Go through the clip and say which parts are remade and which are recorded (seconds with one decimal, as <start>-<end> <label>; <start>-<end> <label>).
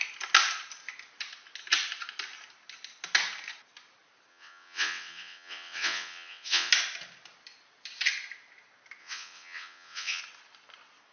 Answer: 0.0-4.3 recorded; 4.3-6.7 remade; 6.7-9.0 recorded; 9.0-10.2 remade; 10.2-11.1 recorded